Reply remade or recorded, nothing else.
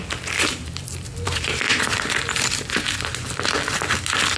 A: remade